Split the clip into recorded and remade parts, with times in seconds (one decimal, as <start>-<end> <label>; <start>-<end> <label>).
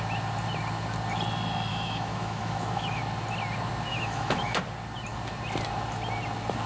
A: 0.0-1.7 recorded; 1.7-3.0 remade; 3.0-3.9 recorded; 3.9-4.6 remade; 4.6-6.7 recorded